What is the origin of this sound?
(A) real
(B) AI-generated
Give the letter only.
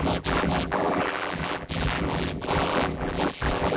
B